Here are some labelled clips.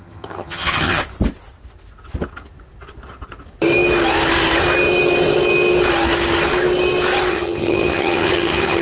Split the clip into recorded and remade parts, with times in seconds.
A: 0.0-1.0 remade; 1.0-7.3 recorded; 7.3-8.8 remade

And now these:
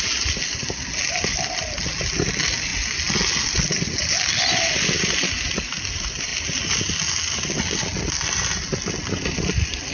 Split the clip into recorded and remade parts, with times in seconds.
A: 0.0-9.9 recorded

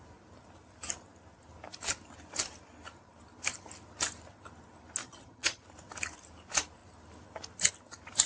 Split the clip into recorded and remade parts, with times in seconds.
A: 0.0-5.0 recorded; 5.0-5.6 remade; 5.6-8.3 recorded